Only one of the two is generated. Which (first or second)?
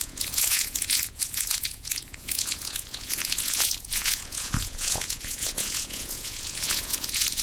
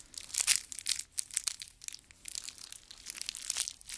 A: first